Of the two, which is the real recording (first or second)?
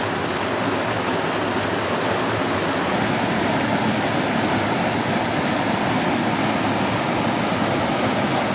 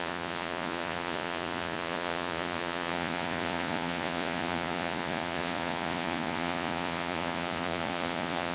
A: first